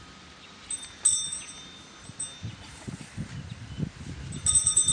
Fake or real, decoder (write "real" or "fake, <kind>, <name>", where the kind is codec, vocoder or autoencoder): real